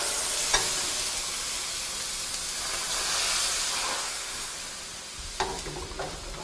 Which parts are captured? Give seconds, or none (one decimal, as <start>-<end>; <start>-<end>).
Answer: 0.0-4.0; 4.5-6.4